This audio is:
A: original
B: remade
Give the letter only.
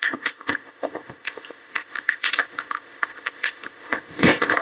B